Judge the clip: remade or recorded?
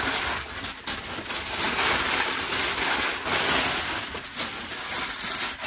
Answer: recorded